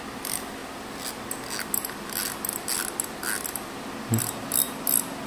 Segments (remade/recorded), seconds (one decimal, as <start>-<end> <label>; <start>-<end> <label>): 0.0-5.3 recorded